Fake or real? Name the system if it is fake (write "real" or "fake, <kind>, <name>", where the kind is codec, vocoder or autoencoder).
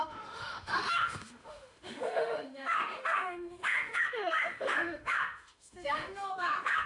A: fake, autoencoder, DAC-VAE